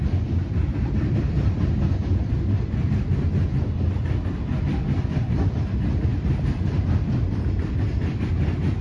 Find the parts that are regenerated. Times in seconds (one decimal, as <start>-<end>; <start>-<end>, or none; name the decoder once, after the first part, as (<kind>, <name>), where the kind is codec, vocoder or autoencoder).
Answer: 4.7-5.6 (vocoder, BigVGAN v2); 6.1-8.3